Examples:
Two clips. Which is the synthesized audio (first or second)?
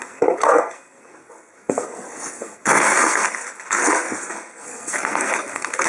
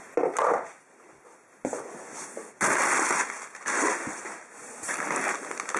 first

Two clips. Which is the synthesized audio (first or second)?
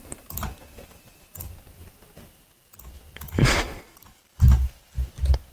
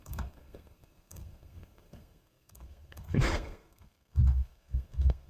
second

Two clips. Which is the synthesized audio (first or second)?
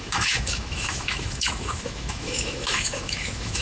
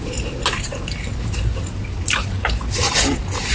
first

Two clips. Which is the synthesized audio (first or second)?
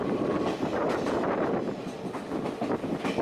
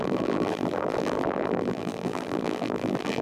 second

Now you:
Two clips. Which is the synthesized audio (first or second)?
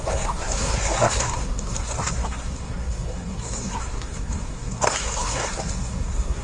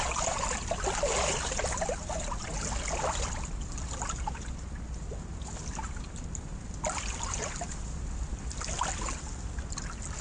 first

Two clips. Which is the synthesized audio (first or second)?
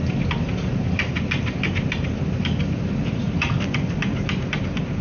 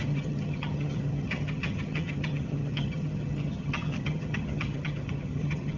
second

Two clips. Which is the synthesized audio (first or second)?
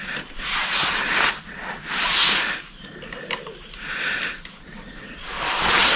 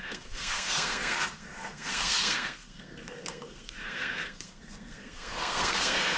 second